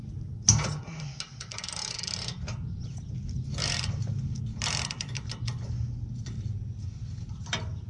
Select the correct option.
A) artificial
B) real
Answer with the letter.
B